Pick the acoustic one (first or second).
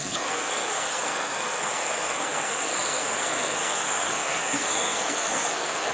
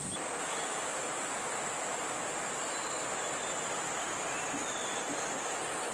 second